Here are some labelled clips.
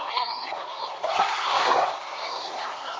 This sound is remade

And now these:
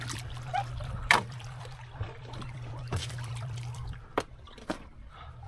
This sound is remade